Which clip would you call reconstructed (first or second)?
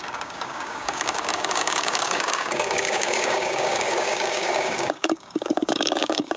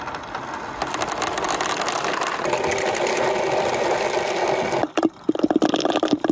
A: first